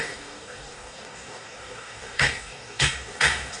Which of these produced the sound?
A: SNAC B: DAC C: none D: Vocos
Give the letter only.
B